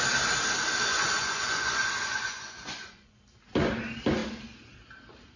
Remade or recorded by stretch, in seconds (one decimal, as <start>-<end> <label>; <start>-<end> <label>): 0.0-0.9 recorded; 0.9-3.2 remade; 3.2-5.4 recorded